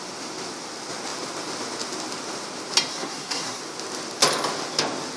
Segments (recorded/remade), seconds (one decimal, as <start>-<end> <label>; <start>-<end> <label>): 0.0-2.9 recorded; 2.9-3.6 remade; 3.6-5.2 recorded